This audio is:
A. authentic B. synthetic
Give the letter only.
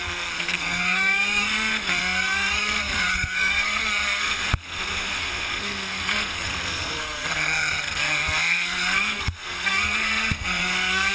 B